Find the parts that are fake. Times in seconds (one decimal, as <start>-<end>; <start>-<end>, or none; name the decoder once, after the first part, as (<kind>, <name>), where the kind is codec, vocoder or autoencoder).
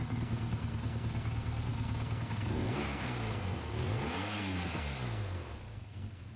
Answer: 0.0-6.4 (codec, SNAC)